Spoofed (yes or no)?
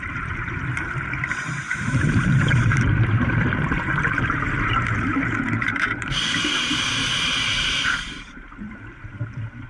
yes